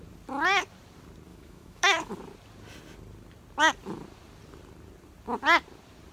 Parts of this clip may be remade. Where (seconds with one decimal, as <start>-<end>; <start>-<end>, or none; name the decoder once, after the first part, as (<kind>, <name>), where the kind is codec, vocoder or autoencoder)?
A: 1.3-2.1 (autoencoder, DAC-VAE)